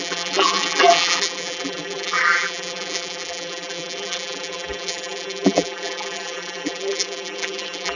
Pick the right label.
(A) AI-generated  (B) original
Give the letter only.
A